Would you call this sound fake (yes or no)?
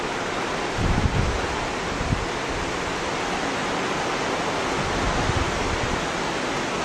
no